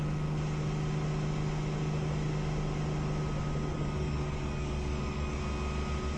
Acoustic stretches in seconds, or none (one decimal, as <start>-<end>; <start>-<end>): 0.0-3.7; 5.4-6.2